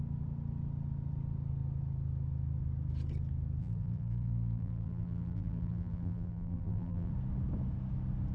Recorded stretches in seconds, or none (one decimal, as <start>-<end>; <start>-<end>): 0.0-3.6; 7.1-8.3